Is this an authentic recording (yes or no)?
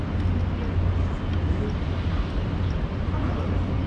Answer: yes